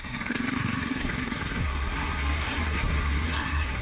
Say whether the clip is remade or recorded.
remade